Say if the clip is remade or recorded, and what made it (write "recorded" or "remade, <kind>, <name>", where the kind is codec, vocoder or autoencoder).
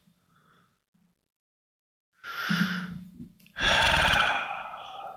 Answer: recorded